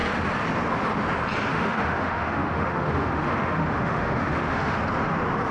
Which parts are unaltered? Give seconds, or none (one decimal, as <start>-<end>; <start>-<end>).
0.0-1.5; 4.8-5.5